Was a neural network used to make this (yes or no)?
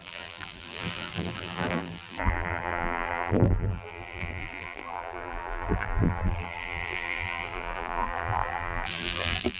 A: yes